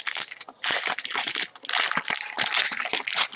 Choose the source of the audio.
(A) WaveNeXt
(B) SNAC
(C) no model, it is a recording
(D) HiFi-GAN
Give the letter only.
C